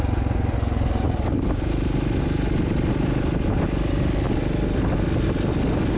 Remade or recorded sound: recorded